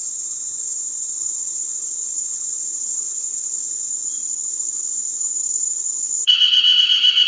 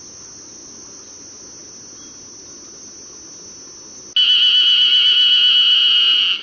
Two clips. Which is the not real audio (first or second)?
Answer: first